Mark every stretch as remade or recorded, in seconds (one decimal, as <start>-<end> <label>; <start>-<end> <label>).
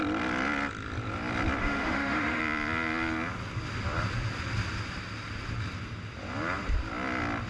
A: 0.0-1.6 recorded; 1.6-2.4 remade; 2.4-7.5 recorded